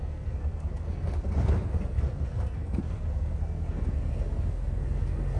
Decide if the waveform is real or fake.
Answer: fake